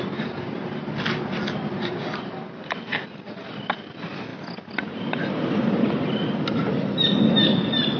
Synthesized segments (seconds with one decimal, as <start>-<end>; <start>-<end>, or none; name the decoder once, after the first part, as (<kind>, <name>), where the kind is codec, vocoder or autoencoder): none